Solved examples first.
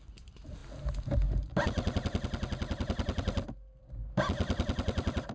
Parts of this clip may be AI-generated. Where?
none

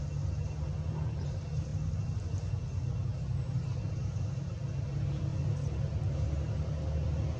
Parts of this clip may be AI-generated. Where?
none

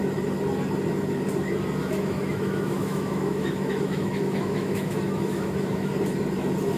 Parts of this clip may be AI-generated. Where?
1.8-5.9 (autoencoder, DAC-VAE)